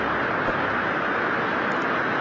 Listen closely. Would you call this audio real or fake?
real